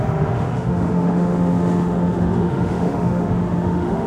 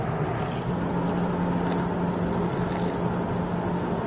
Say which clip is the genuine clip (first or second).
second